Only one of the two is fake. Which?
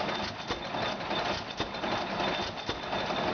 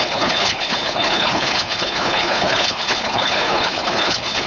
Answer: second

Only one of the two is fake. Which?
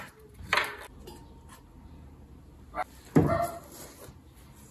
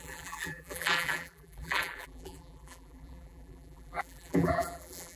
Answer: second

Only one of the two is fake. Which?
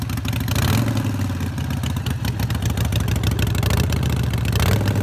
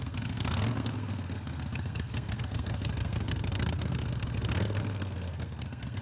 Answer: second